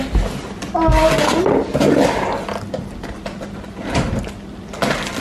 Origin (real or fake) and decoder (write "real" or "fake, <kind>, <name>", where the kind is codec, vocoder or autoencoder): real